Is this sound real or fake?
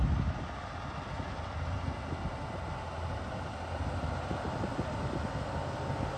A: real